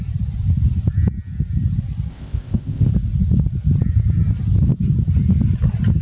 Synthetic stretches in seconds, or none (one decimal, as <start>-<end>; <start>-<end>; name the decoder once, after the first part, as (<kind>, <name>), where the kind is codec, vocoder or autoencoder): 2.1-2.9 (codec, ZipCodec)